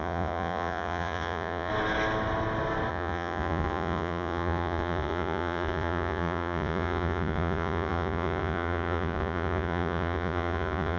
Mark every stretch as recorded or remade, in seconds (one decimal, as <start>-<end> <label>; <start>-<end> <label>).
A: 0.0-1.7 remade; 1.7-2.9 recorded; 2.9-11.0 remade